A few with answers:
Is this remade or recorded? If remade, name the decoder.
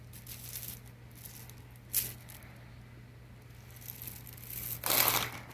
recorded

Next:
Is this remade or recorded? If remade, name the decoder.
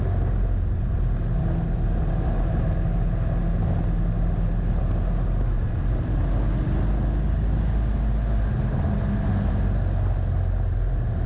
recorded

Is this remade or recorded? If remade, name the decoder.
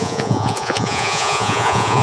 remade, vocoder, Vocos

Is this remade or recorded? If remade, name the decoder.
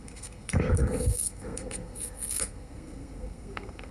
remade, codec, SNAC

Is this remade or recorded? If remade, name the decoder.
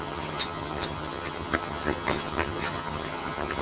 remade, vocoder, HiFi-GAN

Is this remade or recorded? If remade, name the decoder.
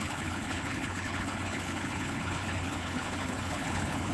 remade, codec, HILCodec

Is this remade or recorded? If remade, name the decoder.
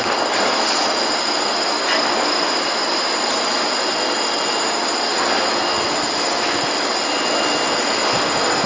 recorded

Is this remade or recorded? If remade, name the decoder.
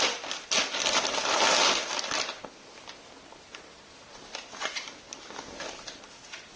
recorded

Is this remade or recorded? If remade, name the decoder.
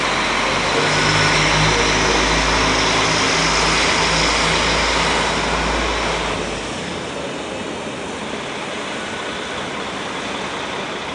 recorded